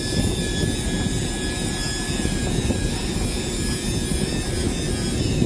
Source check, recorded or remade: recorded